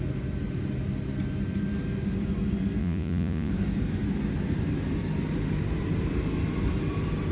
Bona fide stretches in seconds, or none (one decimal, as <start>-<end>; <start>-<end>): 0.0-2.8; 3.5-7.3